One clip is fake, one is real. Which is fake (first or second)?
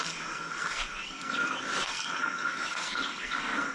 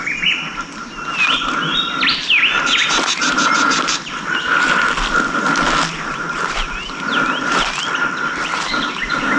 first